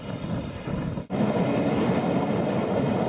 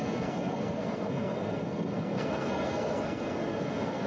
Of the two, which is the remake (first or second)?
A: second